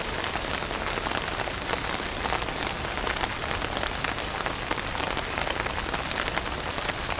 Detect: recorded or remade recorded